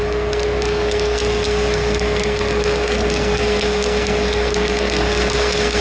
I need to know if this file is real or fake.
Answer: fake